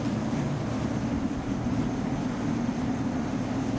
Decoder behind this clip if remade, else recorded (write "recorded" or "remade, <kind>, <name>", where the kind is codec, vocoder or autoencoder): recorded